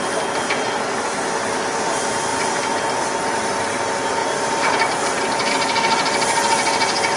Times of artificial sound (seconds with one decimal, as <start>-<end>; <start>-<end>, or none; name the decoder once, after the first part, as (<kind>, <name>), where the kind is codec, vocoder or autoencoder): 2.3-2.8 (vocoder, BigVGAN v2); 4.2-4.9